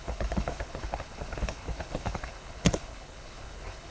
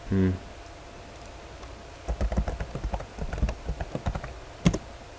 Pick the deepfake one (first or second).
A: first